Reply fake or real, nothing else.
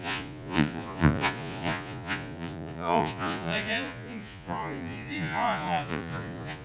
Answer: fake